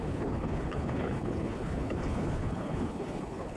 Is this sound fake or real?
fake